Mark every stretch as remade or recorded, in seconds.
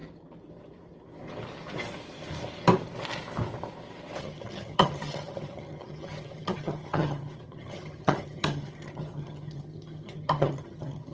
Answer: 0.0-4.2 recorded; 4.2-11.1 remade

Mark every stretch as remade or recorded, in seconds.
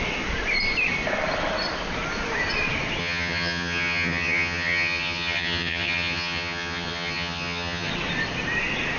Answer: 0.0-3.0 recorded; 3.0-7.9 remade; 7.9-9.0 recorded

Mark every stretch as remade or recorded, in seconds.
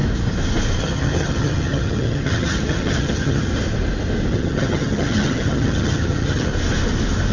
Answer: 0.0-0.8 recorded; 0.8-3.5 remade; 3.5-4.3 recorded; 4.3-6.5 remade; 6.5-7.3 recorded